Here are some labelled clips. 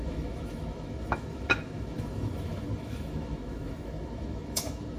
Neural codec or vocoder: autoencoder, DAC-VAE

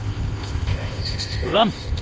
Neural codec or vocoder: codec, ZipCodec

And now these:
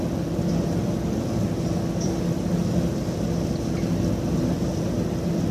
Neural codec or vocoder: none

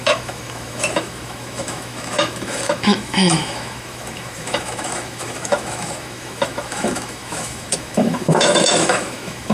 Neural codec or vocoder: autoencoder, DAC-VAE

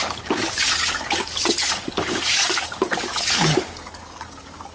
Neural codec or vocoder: codec, DAC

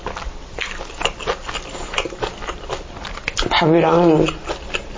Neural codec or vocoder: none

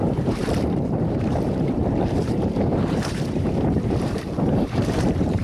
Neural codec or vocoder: vocoder, BigVGAN v2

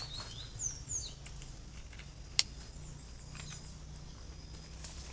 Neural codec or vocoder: none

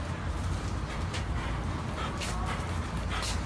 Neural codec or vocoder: none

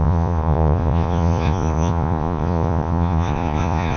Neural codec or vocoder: vocoder, Vocos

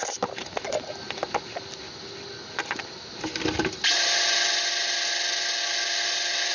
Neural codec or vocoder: none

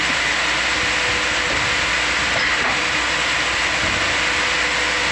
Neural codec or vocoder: none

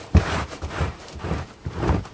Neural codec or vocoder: vocoder, BigVGAN v2